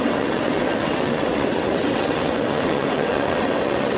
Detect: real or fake fake